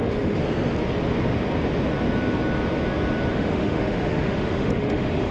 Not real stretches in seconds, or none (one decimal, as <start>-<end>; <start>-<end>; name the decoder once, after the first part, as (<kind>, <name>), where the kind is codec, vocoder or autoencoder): 0.0-0.4 (autoencoder, DAC-VAE); 3.3-5.3

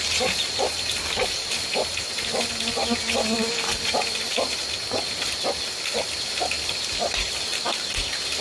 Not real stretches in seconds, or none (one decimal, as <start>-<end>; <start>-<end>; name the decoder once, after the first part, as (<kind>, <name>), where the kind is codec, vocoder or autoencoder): none

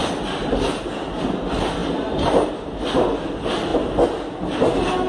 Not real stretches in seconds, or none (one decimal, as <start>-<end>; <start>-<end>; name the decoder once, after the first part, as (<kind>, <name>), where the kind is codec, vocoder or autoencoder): none

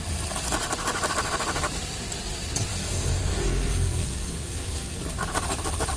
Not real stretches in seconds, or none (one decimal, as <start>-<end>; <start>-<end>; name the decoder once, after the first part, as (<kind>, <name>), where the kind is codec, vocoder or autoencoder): 2.8-5.0 (codec, SNAC)

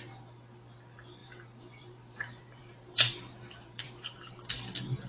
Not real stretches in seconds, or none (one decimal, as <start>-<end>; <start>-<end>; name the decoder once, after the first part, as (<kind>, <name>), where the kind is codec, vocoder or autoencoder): 1.2-4.3 (vocoder, BigVGAN v2)